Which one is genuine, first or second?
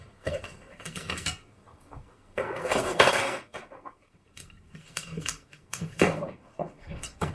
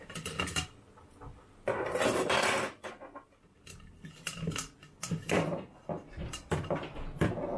second